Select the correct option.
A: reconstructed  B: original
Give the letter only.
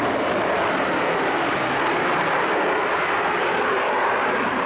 B